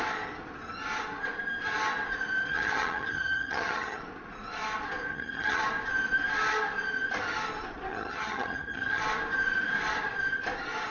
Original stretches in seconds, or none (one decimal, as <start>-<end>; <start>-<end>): 0.0-2.5; 4.0-5.1; 5.6-7.9; 9.0-10.9